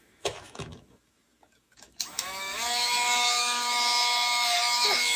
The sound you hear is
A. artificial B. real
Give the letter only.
A